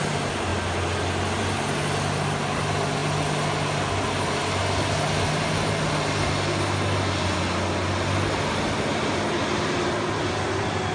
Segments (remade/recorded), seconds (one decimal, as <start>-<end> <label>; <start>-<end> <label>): 0.0-10.9 recorded